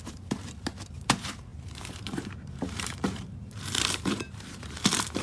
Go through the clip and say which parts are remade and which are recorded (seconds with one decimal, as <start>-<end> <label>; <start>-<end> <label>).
0.0-5.2 remade